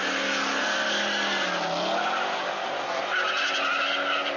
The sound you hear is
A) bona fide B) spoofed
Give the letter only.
A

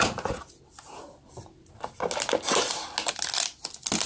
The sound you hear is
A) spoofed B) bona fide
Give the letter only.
B